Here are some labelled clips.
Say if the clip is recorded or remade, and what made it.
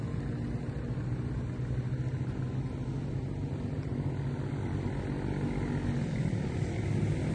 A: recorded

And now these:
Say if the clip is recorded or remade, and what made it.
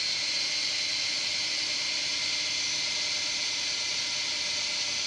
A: recorded